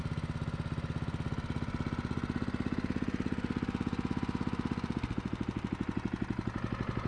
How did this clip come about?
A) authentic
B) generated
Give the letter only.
A